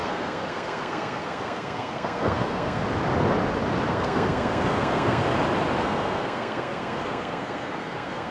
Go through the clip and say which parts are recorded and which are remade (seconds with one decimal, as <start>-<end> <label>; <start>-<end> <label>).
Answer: 0.0-2.8 remade; 2.8-3.9 recorded; 3.9-5.2 remade; 5.2-5.8 recorded; 5.8-8.3 remade